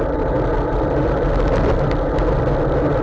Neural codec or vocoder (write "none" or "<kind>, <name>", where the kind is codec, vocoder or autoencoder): none